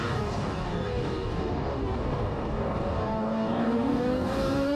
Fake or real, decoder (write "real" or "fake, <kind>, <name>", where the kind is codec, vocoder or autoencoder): fake, codec, DAC